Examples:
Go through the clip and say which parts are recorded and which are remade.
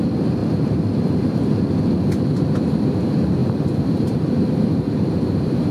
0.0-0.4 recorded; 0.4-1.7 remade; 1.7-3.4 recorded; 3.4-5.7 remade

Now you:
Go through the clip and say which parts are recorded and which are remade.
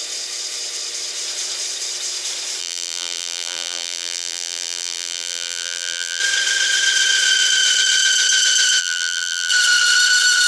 0.0-2.6 recorded; 2.6-6.2 remade; 6.2-8.8 recorded; 8.8-9.5 remade; 9.5-10.5 recorded